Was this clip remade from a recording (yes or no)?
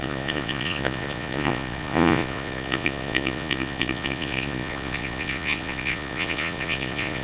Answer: yes